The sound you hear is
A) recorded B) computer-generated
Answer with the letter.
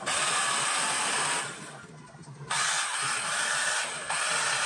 A